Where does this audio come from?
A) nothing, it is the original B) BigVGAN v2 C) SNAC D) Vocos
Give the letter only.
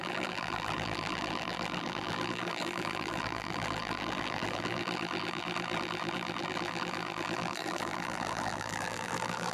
B